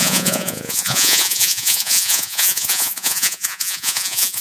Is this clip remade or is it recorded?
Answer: remade